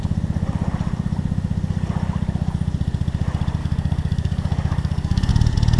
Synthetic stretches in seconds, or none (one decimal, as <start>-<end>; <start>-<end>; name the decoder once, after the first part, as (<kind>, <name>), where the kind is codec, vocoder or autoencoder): 3.6-5.3 (codec, DAC)